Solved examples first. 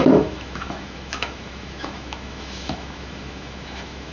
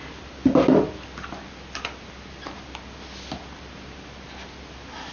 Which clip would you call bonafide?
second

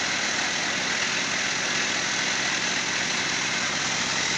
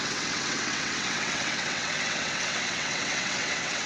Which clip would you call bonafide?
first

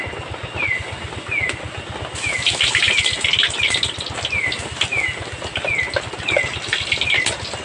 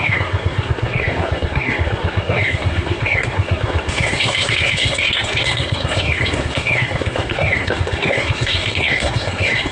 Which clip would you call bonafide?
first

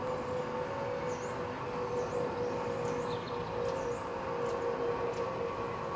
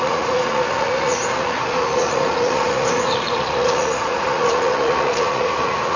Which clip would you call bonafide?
first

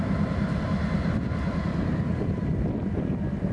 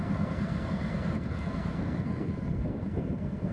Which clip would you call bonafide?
first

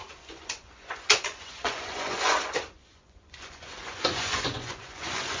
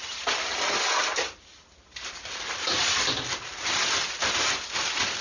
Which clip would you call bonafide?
second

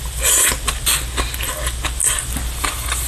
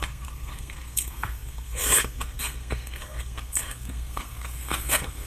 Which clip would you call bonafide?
first